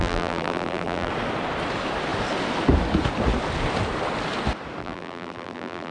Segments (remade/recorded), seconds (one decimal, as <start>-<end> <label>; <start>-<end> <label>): 0.0-1.1 remade; 1.1-4.8 recorded; 4.8-5.9 remade